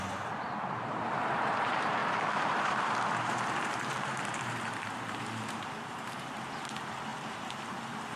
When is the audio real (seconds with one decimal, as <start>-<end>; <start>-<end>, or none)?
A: none